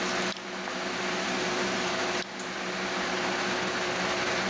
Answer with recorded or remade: recorded